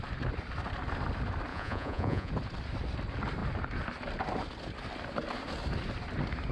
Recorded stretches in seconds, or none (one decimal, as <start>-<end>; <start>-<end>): 0.0-1.5; 2.3-6.5